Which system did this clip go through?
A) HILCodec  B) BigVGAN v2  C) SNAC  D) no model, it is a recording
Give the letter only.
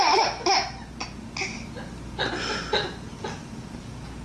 D